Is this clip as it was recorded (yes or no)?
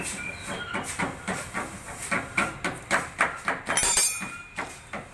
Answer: yes